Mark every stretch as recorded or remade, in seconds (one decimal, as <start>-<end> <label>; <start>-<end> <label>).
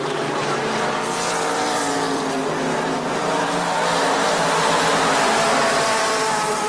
0.0-2.4 remade; 2.4-3.1 recorded; 3.1-6.7 remade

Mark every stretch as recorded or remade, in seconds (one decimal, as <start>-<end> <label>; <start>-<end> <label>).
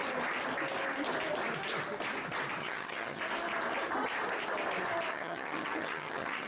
0.0-2.6 recorded; 2.6-3.2 remade; 3.2-5.1 recorded; 5.1-6.5 remade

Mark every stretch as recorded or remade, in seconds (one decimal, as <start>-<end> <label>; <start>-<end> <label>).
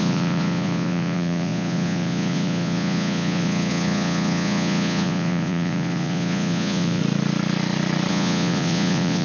0.0-7.0 remade; 7.0-8.1 recorded; 8.1-9.2 remade